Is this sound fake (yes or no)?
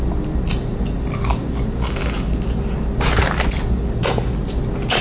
no